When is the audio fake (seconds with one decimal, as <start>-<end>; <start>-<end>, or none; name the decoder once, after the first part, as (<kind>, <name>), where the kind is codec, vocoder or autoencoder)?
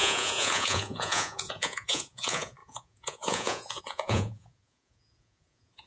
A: 0.0-5.9 (vocoder, Vocos)